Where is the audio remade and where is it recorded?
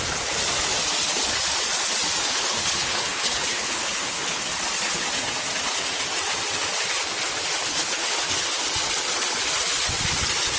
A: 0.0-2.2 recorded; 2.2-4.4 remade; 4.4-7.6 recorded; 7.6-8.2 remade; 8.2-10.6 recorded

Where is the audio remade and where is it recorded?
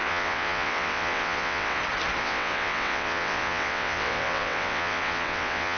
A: 0.0-1.8 remade; 1.8-2.2 recorded; 2.2-5.8 remade